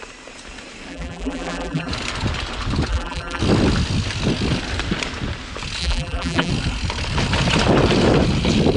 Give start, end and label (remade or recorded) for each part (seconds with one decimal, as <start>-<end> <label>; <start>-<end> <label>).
0.0-0.9 recorded; 0.9-1.9 remade; 1.9-2.9 recorded; 2.9-3.4 remade; 3.4-5.8 recorded; 5.8-6.5 remade; 6.5-8.8 recorded